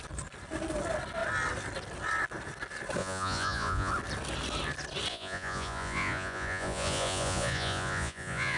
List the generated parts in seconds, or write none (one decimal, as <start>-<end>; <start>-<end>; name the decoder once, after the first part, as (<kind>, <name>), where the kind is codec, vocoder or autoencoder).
3.0-3.9 (vocoder, Vocos); 5.1-8.6